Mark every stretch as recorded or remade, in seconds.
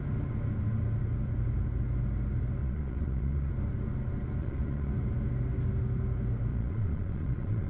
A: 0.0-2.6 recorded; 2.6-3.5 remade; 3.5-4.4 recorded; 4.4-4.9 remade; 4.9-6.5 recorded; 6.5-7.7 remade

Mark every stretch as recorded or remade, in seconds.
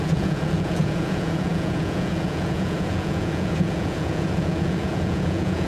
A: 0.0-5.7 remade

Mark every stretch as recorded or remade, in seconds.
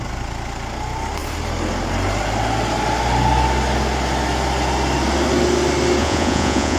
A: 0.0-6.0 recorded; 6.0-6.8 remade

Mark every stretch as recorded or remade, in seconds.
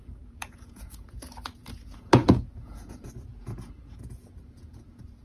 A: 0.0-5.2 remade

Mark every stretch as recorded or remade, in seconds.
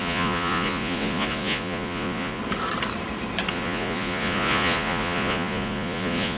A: 0.0-2.4 remade; 2.4-3.5 recorded; 3.5-6.4 remade